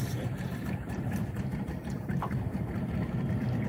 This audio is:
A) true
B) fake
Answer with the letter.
B